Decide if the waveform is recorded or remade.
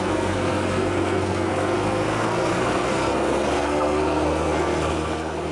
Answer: remade